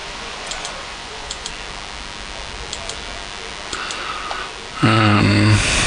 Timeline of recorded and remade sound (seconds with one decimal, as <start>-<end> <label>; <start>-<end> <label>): 0.0-1.5 remade; 1.5-5.9 recorded